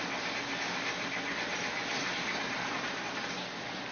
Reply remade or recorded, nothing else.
recorded